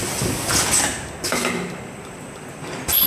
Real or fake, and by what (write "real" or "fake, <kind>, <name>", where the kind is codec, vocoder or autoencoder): real